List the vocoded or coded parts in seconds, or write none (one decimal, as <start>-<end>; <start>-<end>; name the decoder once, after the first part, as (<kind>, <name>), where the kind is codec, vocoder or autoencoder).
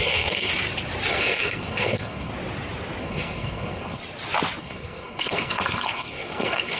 0.0-0.5 (codec, SNAC); 1.1-2.3; 3.0-4.0; 4.6-6.8